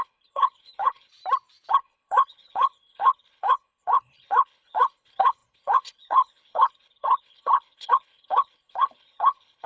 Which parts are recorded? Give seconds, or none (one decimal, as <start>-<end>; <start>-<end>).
1.1-1.7